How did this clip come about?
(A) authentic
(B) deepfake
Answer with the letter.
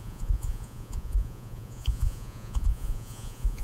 B